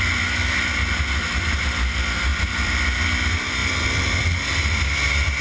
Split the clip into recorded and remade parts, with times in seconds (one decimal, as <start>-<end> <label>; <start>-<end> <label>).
0.0-2.3 recorded; 2.3-3.0 remade; 3.0-3.6 recorded; 3.6-4.3 remade; 4.3-5.4 recorded